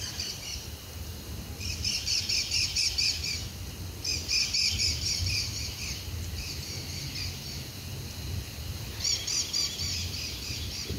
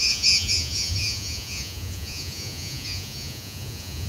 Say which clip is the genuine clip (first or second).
first